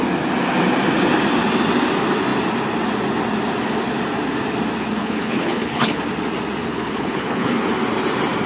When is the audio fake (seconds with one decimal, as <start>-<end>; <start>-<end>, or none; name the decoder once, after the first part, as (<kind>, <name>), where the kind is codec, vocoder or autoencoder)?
5.0-6.0 (codec, HILCodec); 6.6-7.7